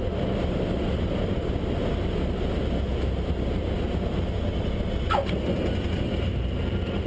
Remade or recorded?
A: recorded